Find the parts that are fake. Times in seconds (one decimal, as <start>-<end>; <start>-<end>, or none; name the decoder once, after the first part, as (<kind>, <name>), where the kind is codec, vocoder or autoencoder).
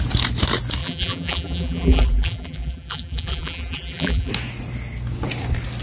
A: 0.8-4.3 (vocoder, BigVGAN v2)